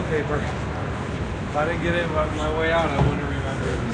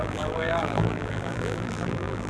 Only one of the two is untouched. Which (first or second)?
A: first